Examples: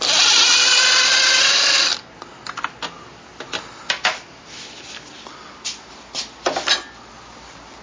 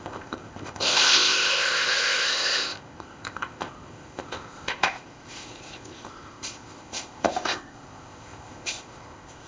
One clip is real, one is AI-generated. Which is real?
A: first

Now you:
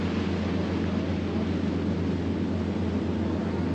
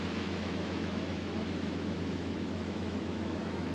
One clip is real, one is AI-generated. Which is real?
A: first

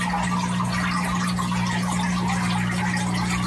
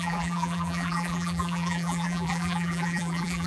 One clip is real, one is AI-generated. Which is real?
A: first